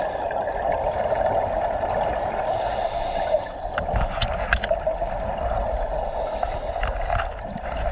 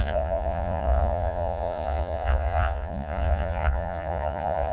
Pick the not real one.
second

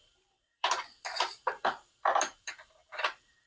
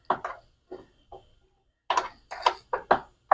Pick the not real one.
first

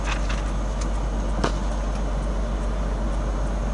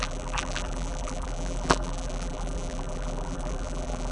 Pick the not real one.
second